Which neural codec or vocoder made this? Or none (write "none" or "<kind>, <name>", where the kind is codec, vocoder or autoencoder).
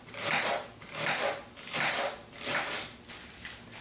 none